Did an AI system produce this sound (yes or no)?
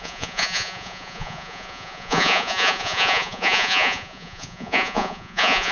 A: yes